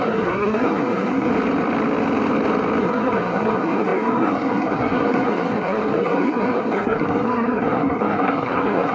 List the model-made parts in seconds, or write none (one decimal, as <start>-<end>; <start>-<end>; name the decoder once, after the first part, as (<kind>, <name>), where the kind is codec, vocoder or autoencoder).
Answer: 0.0-1.3 (codec, SNAC); 2.8-8.9